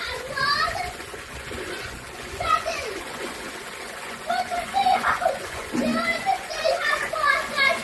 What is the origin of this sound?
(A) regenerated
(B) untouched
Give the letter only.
A